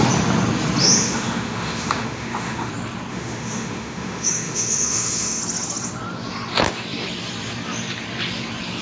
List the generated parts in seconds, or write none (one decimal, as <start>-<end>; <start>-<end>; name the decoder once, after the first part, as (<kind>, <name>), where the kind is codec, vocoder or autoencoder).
0.8-2.7 (autoencoder, DAC-VAE); 3.1-5.4